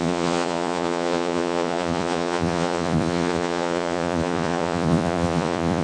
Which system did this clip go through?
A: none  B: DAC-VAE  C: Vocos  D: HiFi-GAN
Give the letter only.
C